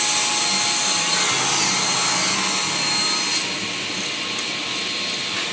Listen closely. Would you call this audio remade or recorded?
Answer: recorded